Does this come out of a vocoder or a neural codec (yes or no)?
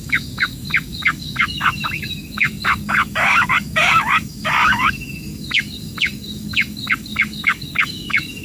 yes